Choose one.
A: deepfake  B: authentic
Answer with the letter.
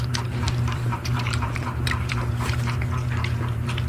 A